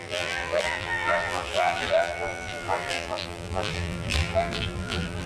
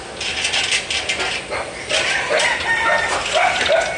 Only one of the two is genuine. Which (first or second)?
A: second